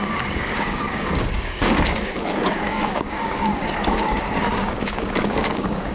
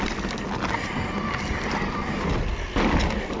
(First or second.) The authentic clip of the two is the second